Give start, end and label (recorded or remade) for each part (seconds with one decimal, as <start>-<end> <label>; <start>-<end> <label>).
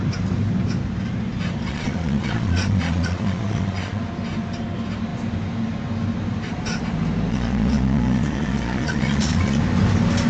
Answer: 0.0-1.7 recorded; 1.7-4.0 remade; 4.0-7.3 recorded; 7.3-9.6 remade; 9.6-10.3 recorded